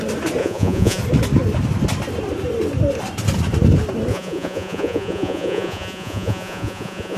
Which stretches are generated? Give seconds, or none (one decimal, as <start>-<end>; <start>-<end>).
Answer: 0.4-1.0; 4.1-7.2